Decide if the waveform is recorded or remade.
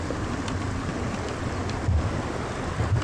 recorded